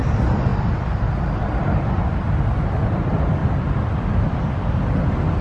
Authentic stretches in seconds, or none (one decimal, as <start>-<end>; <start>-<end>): 0.0-5.4